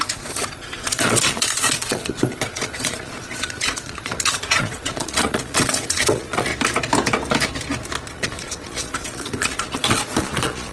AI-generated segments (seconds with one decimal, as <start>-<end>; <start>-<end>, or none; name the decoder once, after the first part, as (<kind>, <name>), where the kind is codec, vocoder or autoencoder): 0.0-6.5 (vocoder, Vocos); 8.1-10.7